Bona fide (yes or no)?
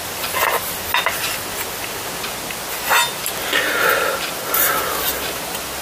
yes